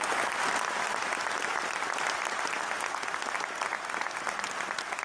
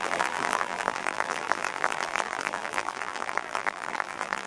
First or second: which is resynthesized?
second